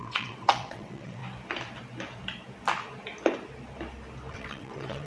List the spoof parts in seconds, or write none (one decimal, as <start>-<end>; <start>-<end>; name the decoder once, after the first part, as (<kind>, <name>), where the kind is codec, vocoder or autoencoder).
0.0-1.2 (vocoder, WaveNeXt); 4.3-5.1